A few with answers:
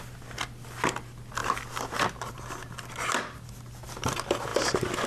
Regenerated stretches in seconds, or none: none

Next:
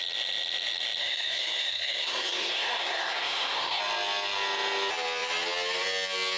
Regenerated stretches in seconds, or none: 1.0-3.8 (codec, SNAC)

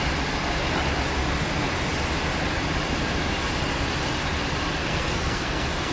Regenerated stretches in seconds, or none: 4.8-5.9 (codec, SNAC)